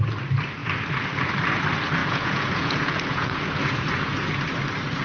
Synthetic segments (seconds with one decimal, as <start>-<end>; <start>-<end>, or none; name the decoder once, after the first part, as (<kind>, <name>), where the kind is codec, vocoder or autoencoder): 2.0-4.3 (vocoder, Vocos)